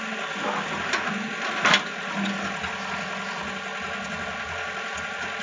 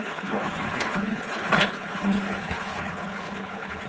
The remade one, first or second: second